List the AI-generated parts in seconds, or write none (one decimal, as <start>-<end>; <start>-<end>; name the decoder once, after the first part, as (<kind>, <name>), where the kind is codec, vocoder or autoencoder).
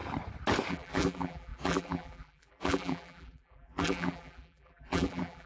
0.7-5.5 (vocoder, BigVGAN v2)